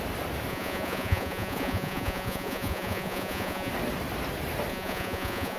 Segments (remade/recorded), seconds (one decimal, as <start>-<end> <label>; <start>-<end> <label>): 0.0-0.5 recorded; 0.5-3.7 remade; 3.7-4.7 recorded; 4.7-5.6 remade